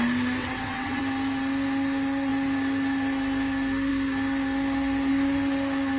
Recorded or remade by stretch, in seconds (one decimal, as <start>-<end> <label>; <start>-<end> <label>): 0.0-0.4 recorded; 0.4-1.0 remade; 1.0-6.0 recorded